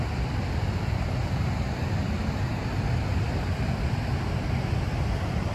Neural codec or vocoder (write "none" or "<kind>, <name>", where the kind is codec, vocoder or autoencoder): none